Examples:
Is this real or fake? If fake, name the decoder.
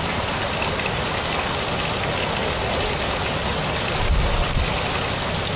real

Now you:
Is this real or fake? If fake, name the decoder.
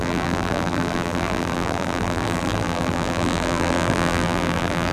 fake, vocoder, BigVGAN v2